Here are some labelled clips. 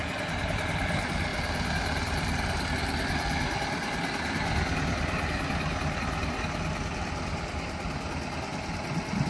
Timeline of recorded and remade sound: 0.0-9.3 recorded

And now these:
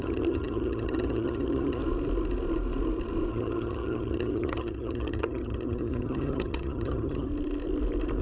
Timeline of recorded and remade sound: 0.0-1.8 remade; 1.8-3.3 recorded; 3.3-7.3 remade; 7.3-8.2 recorded

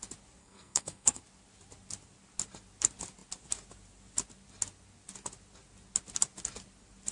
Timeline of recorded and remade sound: 0.0-0.4 recorded; 0.4-1.2 remade; 1.2-7.1 recorded